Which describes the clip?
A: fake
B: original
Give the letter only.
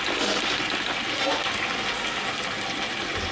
B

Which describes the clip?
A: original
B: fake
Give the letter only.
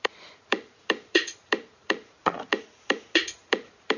B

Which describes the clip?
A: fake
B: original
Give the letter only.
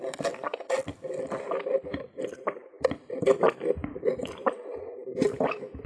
A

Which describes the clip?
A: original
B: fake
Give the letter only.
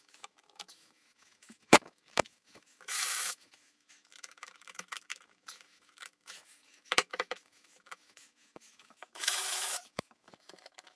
B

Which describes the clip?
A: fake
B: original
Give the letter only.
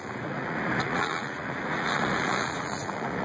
A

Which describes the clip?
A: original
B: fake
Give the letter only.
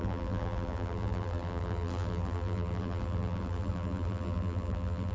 B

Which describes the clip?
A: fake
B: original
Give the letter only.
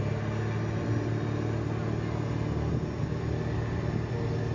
B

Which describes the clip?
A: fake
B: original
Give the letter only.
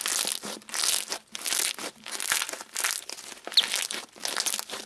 B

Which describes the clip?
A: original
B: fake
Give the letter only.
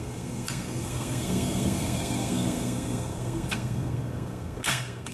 B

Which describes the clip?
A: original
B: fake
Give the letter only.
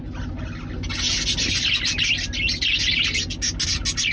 A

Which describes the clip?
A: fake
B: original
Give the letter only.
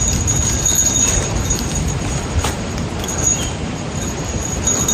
B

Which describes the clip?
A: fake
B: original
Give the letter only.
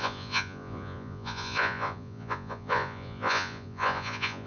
A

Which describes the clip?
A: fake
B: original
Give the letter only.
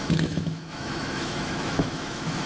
A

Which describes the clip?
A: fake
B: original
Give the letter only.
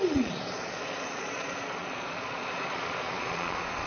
A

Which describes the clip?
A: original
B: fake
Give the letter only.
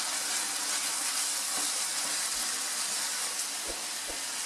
A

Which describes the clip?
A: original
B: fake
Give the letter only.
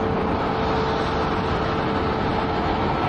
A